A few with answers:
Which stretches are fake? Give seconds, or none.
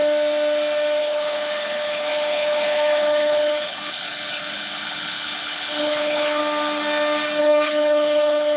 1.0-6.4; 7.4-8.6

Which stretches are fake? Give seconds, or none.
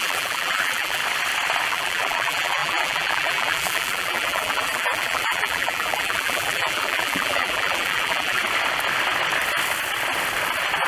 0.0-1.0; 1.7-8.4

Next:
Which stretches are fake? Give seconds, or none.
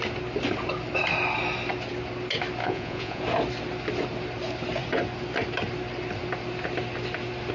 2.6-3.2